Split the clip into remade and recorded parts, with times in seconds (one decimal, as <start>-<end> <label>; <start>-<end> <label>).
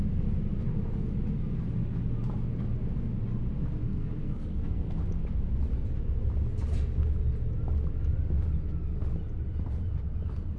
0.0-3.8 recorded; 3.8-4.9 remade; 4.9-10.6 recorded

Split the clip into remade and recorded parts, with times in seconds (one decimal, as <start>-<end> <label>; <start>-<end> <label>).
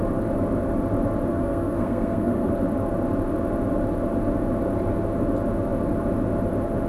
0.0-1.3 recorded; 1.3-2.5 remade; 2.5-6.9 recorded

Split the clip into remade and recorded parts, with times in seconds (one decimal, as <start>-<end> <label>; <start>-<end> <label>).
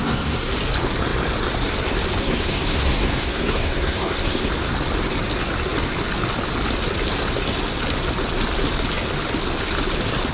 0.0-0.5 remade; 0.5-2.2 recorded; 2.2-4.5 remade; 4.5-10.3 recorded